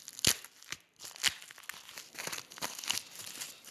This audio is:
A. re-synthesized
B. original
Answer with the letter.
B